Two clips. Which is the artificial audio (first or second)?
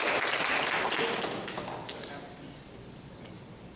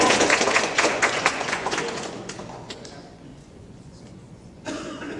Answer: second